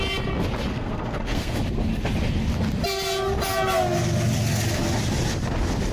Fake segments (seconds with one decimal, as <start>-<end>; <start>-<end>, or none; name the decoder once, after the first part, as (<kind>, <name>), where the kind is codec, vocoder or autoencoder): 0.7-1.6 (codec, SNAC)